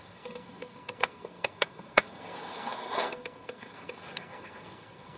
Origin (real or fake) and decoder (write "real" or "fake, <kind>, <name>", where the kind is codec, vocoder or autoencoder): fake, codec, SNAC